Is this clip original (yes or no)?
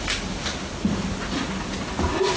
yes